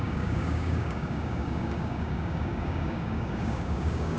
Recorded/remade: remade